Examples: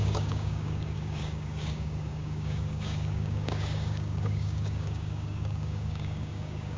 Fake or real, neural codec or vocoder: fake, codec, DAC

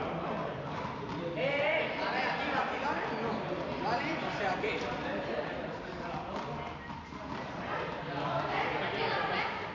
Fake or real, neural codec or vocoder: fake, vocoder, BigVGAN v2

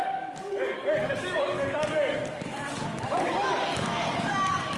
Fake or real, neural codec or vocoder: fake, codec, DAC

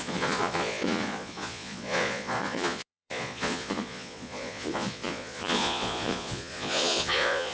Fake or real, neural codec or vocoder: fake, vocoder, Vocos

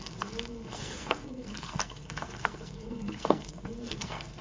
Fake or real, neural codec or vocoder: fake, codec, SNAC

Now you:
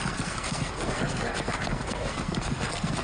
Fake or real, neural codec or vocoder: fake, codec, SNAC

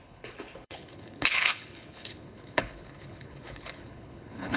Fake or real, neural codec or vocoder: fake, codec, HILCodec